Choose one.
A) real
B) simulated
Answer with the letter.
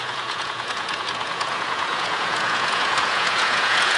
B